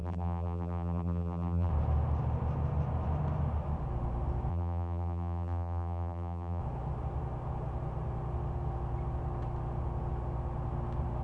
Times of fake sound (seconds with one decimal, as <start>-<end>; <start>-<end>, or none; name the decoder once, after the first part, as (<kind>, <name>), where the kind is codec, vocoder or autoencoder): 0.0-1.7 (vocoder, BigVGAN v2); 4.5-6.6